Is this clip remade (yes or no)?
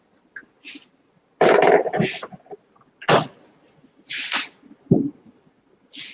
no